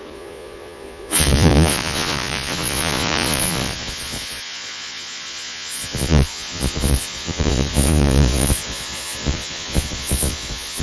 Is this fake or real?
fake